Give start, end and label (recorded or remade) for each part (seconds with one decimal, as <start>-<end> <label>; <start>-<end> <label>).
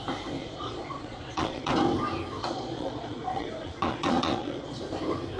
0.0-0.4 recorded; 0.4-1.7 remade; 1.7-2.4 recorded; 2.4-4.8 remade; 4.8-5.4 recorded